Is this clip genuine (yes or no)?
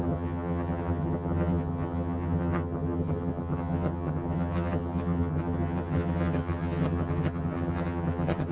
no